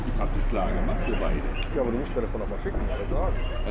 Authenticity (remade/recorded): recorded